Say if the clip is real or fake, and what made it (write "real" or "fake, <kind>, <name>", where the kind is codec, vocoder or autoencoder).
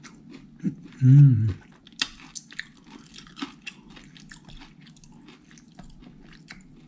real